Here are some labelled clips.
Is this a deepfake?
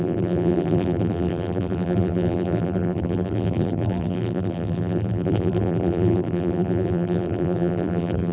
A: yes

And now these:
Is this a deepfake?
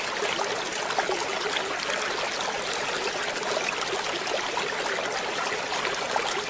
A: no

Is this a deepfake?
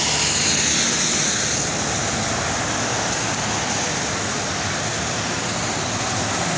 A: no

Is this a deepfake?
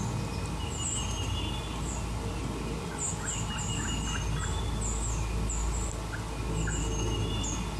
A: no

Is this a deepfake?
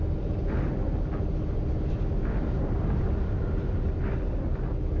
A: no